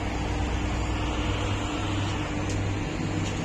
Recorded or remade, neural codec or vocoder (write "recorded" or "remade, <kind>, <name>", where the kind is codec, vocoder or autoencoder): recorded